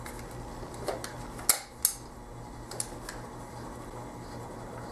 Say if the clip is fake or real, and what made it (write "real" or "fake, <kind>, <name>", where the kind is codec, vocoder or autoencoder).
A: real